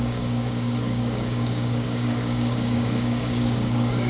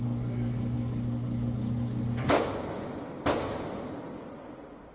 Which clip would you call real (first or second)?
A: second